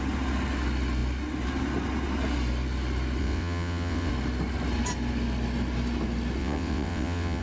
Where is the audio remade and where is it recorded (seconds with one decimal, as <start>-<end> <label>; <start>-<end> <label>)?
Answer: 0.0-3.2 recorded; 3.2-4.1 remade; 4.1-6.4 recorded; 6.4-7.4 remade